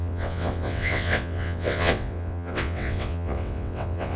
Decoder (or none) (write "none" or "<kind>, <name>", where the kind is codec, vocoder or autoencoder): vocoder, WaveNeXt